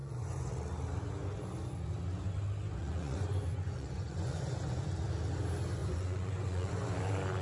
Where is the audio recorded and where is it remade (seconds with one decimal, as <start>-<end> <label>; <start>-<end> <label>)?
0.0-0.5 remade; 0.5-2.8 recorded; 2.8-4.8 remade; 4.8-5.8 recorded; 5.8-6.7 remade; 6.7-7.4 recorded